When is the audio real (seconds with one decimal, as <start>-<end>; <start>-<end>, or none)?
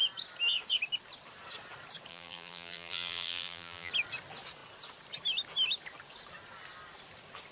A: 0.0-2.1; 3.9-7.5